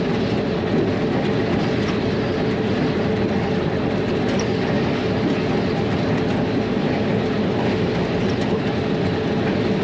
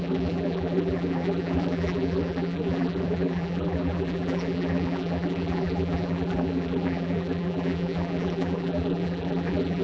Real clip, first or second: first